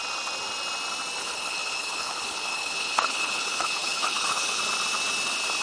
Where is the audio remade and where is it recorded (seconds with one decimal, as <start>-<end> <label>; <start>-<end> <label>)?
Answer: 0.0-1.2 recorded; 1.2-4.6 remade; 4.6-5.6 recorded